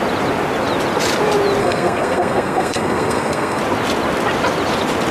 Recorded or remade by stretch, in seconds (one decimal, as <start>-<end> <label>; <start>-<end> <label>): 0.0-1.6 recorded; 1.6-3.6 remade; 3.6-5.1 recorded